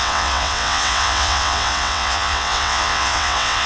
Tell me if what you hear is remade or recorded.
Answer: remade